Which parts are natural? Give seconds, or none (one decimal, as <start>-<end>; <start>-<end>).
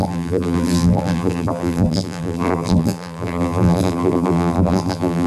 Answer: none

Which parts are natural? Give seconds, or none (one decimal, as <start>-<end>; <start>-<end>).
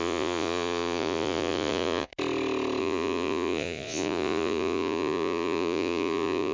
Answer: 2.1-2.8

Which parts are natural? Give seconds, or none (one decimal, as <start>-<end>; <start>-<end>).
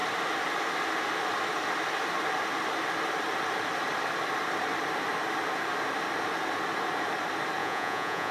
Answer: 0.0-7.6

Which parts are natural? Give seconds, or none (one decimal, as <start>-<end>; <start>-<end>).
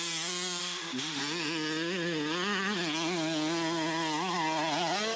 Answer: 0.0-0.6; 1.2-5.2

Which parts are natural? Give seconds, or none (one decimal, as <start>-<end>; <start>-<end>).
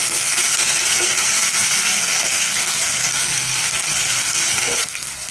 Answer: none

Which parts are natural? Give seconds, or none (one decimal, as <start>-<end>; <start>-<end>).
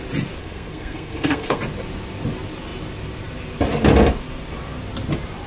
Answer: 0.0-0.4; 1.6-5.5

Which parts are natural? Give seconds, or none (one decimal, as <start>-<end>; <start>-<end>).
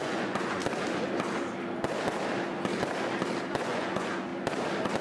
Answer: 0.6-3.6; 4.3-5.0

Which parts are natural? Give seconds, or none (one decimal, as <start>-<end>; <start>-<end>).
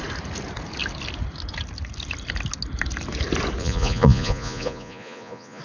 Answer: 0.0-3.6